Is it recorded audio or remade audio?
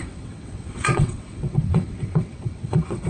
remade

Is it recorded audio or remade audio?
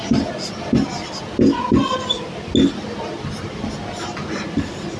recorded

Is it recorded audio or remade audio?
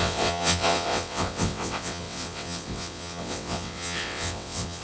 remade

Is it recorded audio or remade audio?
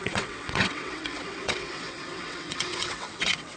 remade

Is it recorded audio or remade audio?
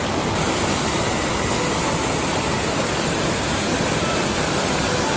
recorded